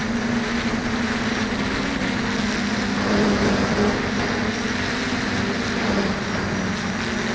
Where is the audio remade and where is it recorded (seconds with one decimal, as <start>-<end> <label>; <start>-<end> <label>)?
0.0-7.3 recorded